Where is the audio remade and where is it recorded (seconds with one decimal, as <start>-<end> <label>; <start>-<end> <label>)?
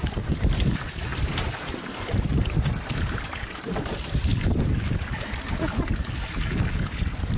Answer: 0.0-4.3 remade; 4.3-6.8 recorded; 6.8-7.4 remade